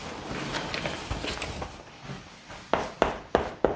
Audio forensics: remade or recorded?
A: recorded